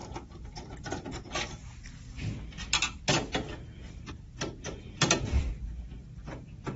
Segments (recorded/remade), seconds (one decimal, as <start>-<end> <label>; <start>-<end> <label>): 0.0-6.8 recorded